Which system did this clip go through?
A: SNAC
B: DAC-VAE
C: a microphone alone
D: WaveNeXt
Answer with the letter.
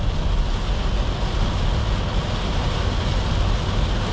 C